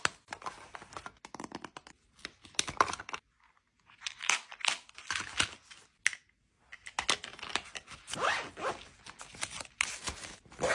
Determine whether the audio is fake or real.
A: real